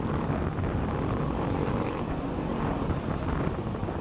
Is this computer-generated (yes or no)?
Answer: no